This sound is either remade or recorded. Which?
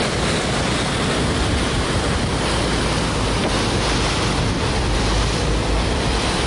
remade